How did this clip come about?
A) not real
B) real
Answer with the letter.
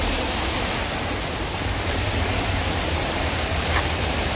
B